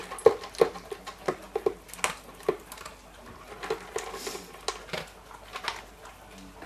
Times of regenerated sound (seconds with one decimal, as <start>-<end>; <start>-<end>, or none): none